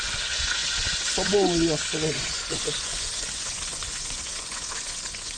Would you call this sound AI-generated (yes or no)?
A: yes